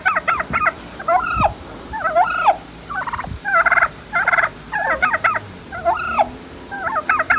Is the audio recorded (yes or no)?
no